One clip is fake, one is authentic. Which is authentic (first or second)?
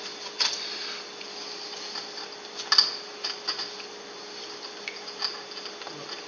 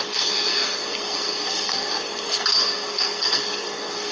first